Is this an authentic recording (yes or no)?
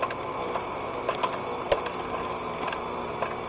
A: yes